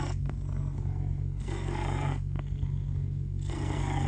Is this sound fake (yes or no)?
yes